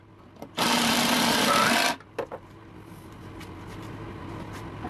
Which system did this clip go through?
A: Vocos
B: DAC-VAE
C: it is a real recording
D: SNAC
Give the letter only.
C